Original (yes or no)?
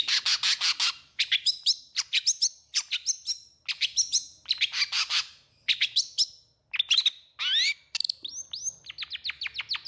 yes